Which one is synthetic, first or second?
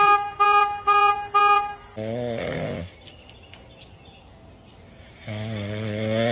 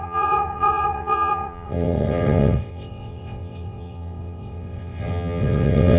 second